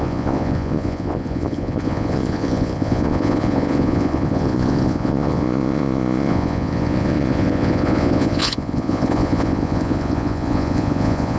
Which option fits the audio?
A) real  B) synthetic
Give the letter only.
B